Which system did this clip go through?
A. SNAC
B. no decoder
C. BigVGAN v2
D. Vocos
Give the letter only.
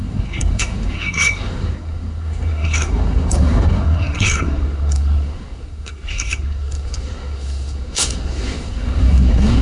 A